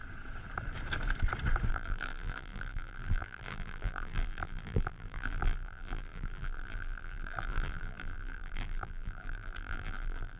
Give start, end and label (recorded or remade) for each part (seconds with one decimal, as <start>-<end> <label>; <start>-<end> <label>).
0.0-1.7 recorded; 1.7-10.4 remade

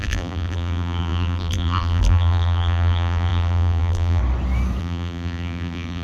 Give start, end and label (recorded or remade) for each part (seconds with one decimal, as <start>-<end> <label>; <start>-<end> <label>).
0.0-4.2 remade; 4.2-4.8 recorded; 4.8-6.0 remade

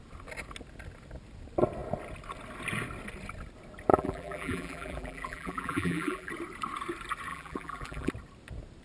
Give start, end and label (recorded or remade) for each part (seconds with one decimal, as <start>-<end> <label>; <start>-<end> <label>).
0.0-3.9 recorded; 3.9-6.3 remade; 6.3-7.3 recorded; 7.3-8.1 remade; 8.1-8.8 recorded

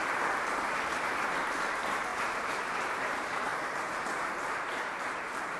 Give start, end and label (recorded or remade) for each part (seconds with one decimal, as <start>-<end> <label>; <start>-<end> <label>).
0.0-0.9 remade; 0.9-1.5 recorded; 1.5-5.6 remade